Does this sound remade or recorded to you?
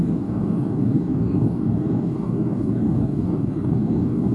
remade